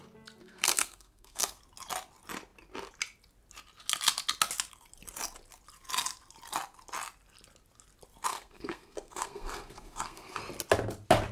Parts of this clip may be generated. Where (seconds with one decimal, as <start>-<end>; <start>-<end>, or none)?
0.4-1.6; 8.3-10.4